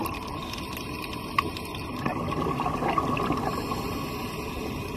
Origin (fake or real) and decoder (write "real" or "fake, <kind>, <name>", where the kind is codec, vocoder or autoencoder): real